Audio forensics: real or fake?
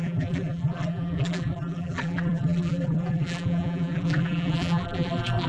fake